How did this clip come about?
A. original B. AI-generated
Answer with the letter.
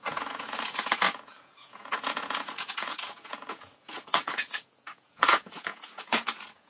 B